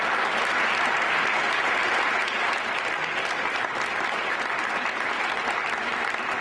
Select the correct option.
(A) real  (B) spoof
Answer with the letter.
A